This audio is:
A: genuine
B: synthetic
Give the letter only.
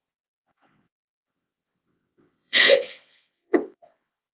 B